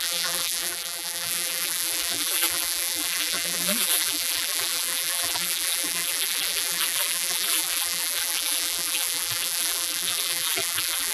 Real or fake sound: fake